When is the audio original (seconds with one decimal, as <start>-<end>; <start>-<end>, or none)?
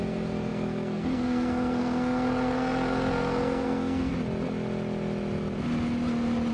4.1-6.5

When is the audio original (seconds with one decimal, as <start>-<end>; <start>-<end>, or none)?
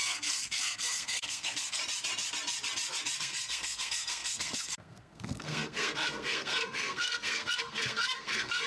1.8-3.2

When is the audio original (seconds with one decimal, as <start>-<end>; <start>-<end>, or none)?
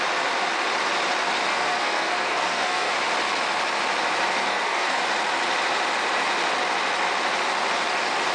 0.0-1.5; 2.9-4.5; 5.0-8.3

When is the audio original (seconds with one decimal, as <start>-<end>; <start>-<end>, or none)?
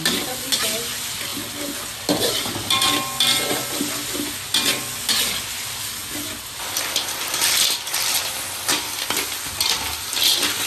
0.0-10.7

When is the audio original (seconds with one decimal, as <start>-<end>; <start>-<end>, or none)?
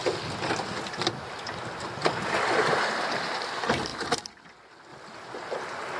0.0-6.0